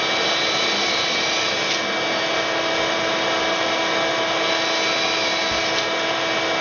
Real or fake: real